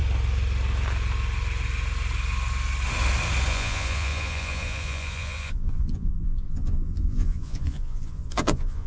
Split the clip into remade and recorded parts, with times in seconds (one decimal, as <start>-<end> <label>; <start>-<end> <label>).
0.0-3.5 recorded; 3.5-8.9 remade

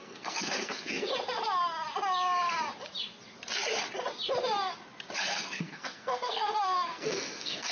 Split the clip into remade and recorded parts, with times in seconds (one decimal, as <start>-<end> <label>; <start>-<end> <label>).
0.0-1.1 remade; 1.1-5.2 recorded; 5.2-7.7 remade